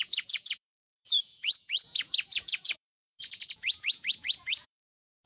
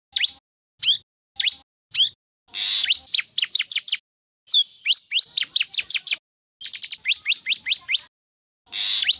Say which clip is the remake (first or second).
first